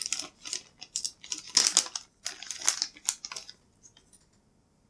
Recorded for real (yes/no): yes